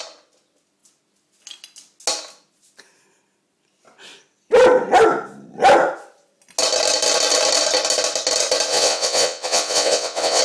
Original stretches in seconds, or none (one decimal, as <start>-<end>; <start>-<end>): 0.0-8.7